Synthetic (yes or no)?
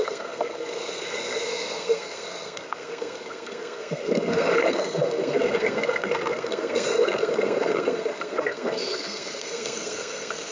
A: yes